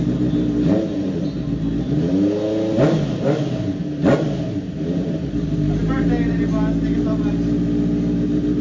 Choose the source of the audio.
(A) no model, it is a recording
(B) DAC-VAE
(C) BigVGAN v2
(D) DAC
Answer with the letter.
A